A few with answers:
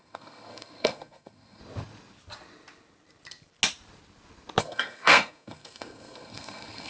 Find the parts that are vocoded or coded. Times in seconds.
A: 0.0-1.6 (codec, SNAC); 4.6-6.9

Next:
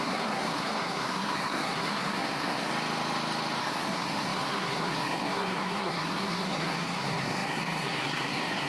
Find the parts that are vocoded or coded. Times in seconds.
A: 0.0-2.7 (codec, SNAC); 3.6-8.7

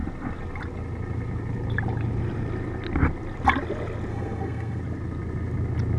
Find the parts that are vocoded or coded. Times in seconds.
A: 4.1-4.8 (codec, SNAC)